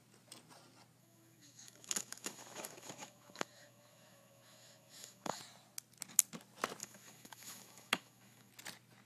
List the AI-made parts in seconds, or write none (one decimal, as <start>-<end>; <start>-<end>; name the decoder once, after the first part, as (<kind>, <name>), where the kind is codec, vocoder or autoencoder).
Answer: 1.0-5.4 (autoencoder, DAC-VAE); 6.8-8.5